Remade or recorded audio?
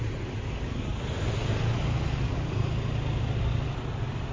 recorded